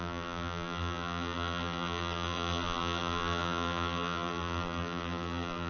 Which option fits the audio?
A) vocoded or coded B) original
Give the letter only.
A